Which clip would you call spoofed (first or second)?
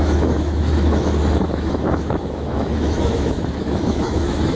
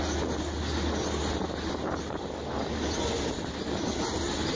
first